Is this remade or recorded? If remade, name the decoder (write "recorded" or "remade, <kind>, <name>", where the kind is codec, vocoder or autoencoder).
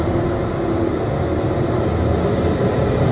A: recorded